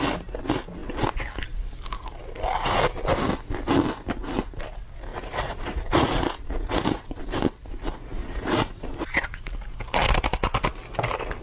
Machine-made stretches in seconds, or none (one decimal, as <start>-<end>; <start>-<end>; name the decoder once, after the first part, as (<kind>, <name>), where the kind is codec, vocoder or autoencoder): 5.1-7.2 (vocoder, Vocos); 8.2-9.5